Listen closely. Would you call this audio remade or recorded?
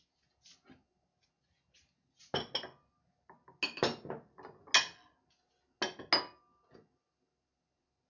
recorded